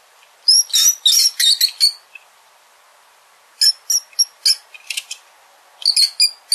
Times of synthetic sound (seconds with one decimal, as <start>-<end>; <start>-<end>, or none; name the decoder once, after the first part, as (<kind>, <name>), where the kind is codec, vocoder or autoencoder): none